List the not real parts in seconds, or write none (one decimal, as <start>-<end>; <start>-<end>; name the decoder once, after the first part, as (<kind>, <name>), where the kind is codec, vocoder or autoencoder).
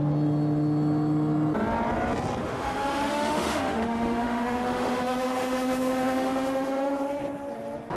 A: 2.4-7.2 (autoencoder, DAC-VAE)